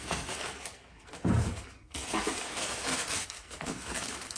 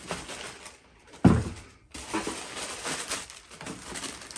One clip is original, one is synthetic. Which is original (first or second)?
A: second